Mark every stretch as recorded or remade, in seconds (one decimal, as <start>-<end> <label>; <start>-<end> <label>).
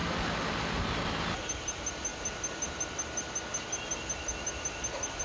0.0-5.2 recorded